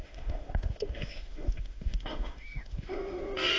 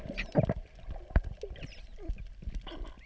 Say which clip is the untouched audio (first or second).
second